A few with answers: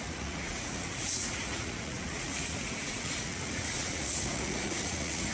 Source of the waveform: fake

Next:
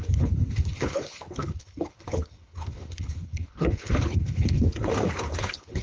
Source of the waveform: fake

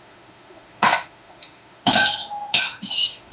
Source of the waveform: fake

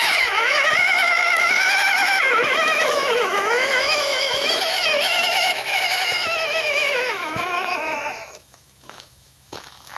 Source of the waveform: fake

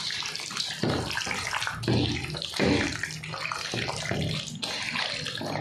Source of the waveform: real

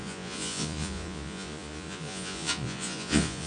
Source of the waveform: fake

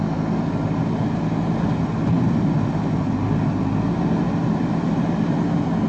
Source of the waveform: real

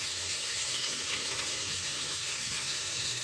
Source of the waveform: fake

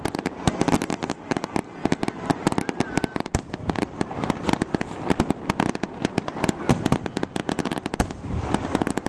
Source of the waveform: fake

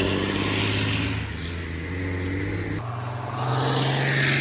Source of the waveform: real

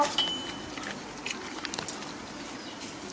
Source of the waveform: real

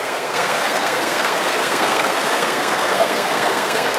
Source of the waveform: fake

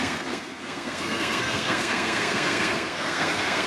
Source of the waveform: fake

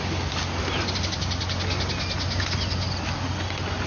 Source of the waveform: real